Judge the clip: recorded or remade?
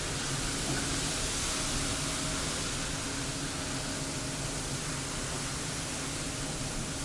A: recorded